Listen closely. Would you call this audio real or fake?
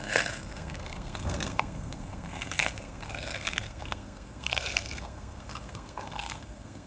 fake